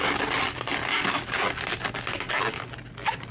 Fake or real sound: real